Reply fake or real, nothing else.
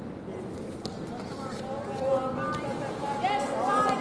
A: real